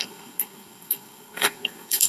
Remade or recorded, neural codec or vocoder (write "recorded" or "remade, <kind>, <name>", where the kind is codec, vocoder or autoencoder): remade, codec, SNAC